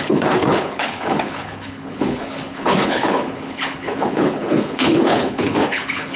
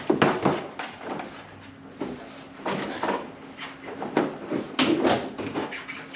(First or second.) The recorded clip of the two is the second